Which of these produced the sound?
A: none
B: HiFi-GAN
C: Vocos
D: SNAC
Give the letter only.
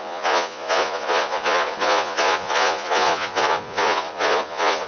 C